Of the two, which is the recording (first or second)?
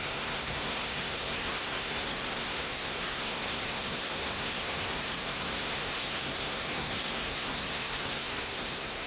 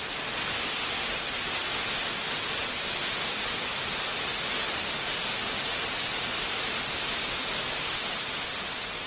second